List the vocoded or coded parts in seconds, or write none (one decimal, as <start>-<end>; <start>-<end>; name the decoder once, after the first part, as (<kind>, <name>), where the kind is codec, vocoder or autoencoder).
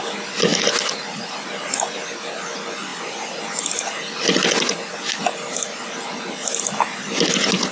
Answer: none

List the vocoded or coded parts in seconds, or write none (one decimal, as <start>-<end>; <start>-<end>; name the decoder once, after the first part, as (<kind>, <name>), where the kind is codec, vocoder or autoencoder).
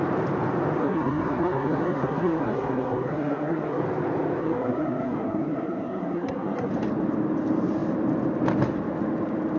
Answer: 0.8-3.8 (codec, SNAC); 4.4-6.7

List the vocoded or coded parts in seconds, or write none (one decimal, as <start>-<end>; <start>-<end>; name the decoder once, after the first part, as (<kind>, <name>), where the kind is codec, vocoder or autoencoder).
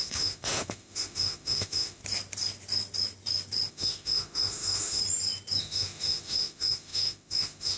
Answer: 0.0-2.0 (autoencoder, DAC-VAE); 3.7-5.0; 5.6-7.8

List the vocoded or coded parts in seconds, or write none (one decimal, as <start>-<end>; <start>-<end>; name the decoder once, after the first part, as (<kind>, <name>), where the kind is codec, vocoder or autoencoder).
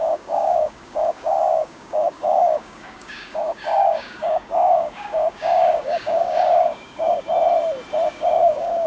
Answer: 0.0-7.3 (codec, DAC); 8.1-8.9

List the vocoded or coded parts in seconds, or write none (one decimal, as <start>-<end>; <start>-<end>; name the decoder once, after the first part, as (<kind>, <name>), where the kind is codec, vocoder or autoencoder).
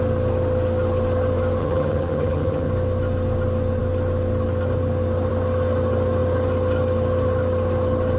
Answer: 1.6-2.7 (vocoder, HiFi-GAN)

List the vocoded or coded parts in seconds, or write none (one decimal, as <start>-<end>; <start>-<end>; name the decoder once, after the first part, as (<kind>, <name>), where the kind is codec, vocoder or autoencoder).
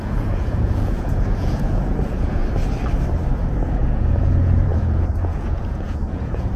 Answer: 0.0-2.4 (vocoder, Vocos); 3.6-6.6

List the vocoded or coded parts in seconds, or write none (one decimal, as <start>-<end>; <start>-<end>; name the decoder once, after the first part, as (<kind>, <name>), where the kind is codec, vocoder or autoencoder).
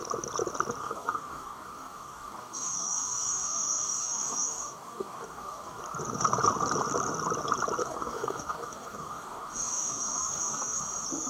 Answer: 0.8-5.8 (codec, DAC); 7.8-10.8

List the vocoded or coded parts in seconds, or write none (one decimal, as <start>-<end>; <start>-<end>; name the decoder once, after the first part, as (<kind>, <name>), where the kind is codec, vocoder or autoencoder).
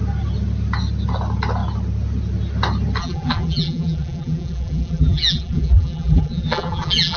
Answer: 3.0-7.2 (vocoder, BigVGAN v2)